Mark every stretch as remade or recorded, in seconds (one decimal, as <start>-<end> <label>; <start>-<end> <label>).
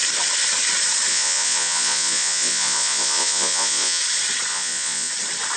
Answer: 0.0-1.1 recorded; 1.1-4.0 remade; 4.0-4.5 recorded; 4.5-5.1 remade; 5.1-5.6 recorded